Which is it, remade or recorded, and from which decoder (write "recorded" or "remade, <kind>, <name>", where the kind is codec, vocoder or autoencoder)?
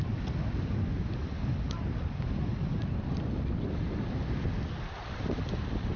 recorded